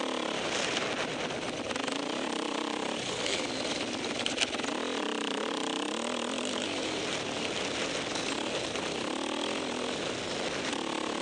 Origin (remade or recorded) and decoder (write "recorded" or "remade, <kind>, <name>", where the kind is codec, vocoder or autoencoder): recorded